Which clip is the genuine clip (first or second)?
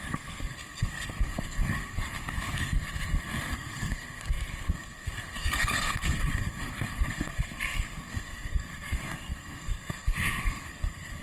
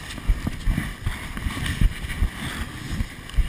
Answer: second